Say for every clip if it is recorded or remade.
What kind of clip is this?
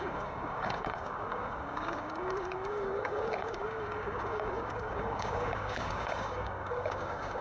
remade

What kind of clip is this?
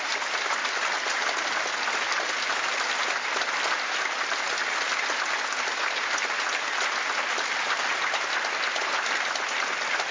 recorded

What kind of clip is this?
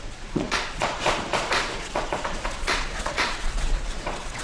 remade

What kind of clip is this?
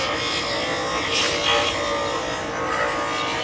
recorded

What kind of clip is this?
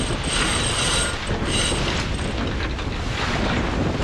recorded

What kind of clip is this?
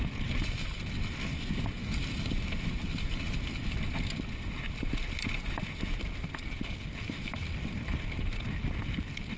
recorded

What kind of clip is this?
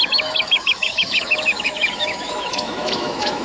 remade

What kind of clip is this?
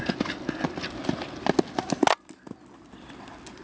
recorded